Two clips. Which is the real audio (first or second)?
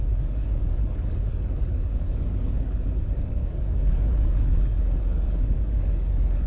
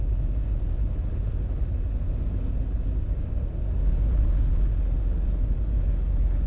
second